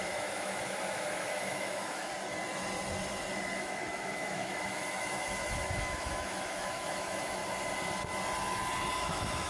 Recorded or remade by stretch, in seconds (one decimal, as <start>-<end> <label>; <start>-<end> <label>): 0.0-2.1 remade; 2.1-3.6 recorded; 3.6-7.4 remade; 7.4-9.0 recorded; 9.0-9.5 remade